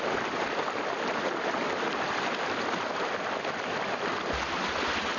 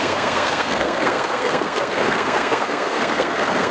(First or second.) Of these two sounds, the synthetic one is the second